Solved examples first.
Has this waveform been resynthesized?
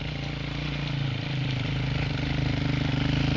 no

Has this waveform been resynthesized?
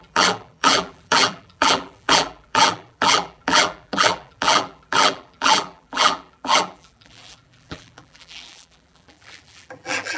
yes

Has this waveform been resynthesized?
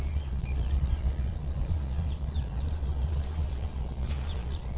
yes